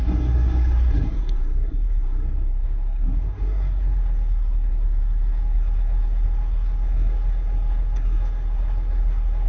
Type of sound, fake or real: fake